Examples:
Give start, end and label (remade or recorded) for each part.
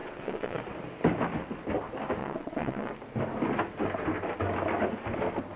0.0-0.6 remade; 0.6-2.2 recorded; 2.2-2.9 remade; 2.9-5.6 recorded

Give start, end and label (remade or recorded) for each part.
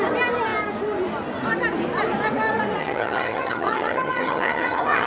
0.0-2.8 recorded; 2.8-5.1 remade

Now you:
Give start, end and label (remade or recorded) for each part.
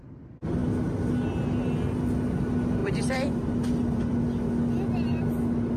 0.0-2.8 recorded; 2.8-4.2 remade; 4.2-5.8 recorded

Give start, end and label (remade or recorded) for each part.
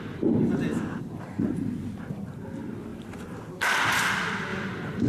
0.0-5.1 recorded